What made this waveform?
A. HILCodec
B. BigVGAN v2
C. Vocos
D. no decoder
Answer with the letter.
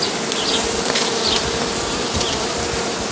D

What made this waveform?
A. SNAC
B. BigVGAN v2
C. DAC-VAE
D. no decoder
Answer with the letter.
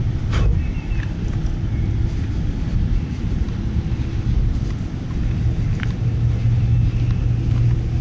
D